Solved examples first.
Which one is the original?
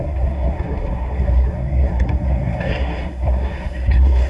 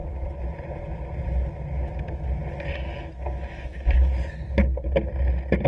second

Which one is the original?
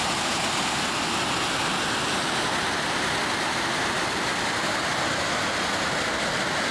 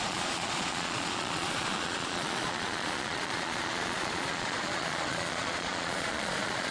first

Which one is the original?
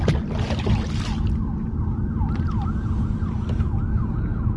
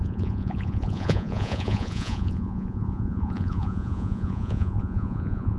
first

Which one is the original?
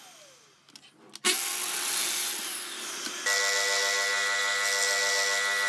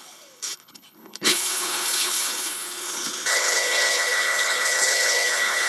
first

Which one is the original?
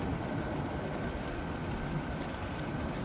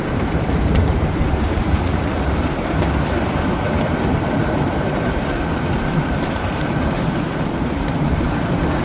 first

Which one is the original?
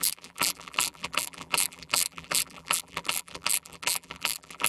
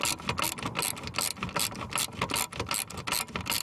second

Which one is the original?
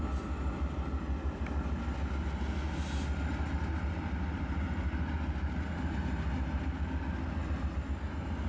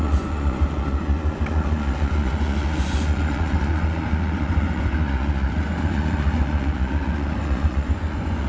first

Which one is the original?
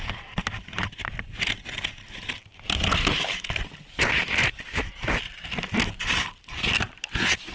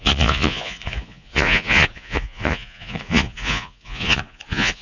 first